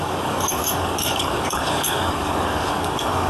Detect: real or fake fake